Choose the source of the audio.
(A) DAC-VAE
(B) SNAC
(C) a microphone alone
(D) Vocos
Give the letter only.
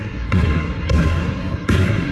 B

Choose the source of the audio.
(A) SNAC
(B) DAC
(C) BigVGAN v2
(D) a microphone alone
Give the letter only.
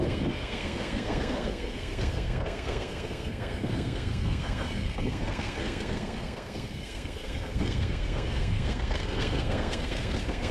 A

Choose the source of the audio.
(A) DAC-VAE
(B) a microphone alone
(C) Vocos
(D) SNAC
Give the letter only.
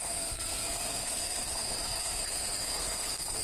D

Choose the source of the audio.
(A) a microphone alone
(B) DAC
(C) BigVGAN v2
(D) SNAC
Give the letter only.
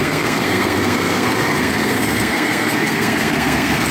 D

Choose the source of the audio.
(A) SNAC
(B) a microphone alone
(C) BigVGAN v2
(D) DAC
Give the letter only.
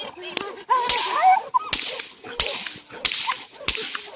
B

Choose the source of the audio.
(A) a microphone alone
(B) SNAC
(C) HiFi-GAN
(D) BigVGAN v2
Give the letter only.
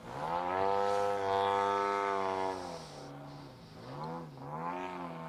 A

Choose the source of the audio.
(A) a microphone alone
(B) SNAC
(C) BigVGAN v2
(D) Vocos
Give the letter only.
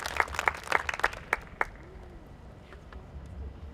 A